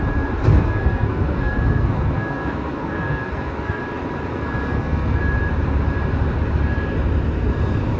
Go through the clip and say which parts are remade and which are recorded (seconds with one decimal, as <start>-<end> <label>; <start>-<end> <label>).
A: 0.0-0.5 recorded; 0.5-3.8 remade; 3.8-4.3 recorded; 4.3-5.2 remade; 5.2-8.0 recorded